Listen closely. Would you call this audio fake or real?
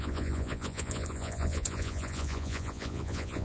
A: fake